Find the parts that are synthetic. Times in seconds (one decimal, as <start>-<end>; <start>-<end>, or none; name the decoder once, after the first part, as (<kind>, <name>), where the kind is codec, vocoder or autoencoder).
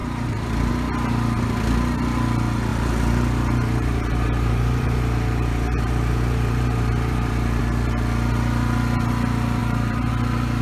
0.0-0.7 (vocoder, BigVGAN v2); 2.7-7.6; 9.6-10.1